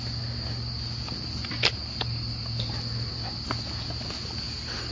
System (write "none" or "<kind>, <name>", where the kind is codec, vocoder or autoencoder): none